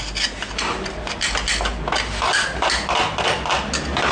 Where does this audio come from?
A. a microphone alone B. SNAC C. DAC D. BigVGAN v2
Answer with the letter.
A